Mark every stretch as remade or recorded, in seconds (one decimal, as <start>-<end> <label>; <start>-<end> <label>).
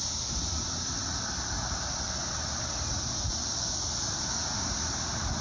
0.0-2.2 remade; 2.2-5.4 recorded